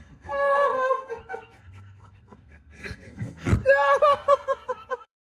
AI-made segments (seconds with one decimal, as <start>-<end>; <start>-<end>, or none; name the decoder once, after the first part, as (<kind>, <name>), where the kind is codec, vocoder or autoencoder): 0.0-3.5 (codec, SNAC); 4.0-5.4